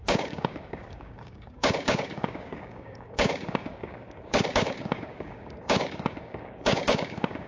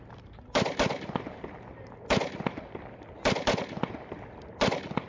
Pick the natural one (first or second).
second